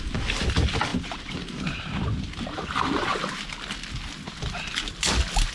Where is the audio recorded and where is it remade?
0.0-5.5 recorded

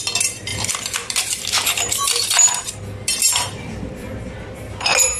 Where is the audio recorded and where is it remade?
0.0-0.5 recorded; 0.5-3.1 remade; 3.1-5.2 recorded

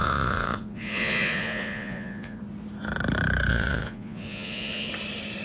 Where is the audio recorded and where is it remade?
0.0-2.4 remade; 2.4-3.5 recorded; 3.5-4.9 remade; 4.9-5.4 recorded